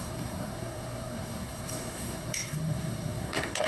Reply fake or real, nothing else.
fake